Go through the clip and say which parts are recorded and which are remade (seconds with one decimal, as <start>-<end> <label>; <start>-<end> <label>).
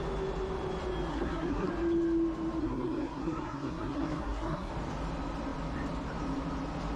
0.0-1.1 recorded; 1.1-1.7 remade; 1.7-2.6 recorded; 2.6-4.7 remade; 4.7-7.0 recorded